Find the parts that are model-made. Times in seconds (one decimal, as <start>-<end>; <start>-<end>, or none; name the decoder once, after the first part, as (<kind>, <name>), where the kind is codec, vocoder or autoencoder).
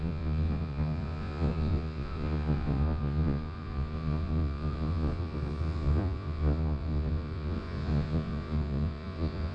0.0-9.5 (vocoder, Vocos)